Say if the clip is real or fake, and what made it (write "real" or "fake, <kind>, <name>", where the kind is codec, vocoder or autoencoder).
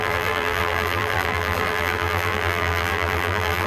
fake, vocoder, BigVGAN v2